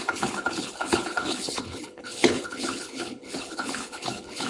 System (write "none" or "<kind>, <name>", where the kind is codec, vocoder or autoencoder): codec, HILCodec